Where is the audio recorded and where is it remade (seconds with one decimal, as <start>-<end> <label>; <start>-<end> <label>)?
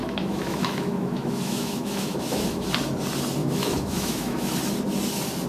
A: 0.0-2.7 remade; 2.7-3.4 recorded; 3.4-4.5 remade; 4.5-5.5 recorded